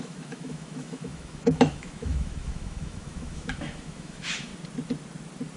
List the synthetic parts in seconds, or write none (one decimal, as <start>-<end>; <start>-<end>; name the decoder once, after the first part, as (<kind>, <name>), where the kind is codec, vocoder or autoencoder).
0.0-4.5 (autoencoder, DAC-VAE)